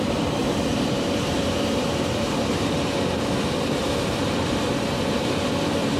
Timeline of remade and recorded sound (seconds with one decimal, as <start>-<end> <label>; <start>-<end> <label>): 0.0-6.0 remade